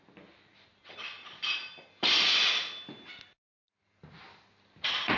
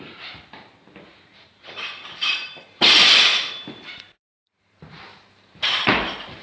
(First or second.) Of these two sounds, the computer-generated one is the second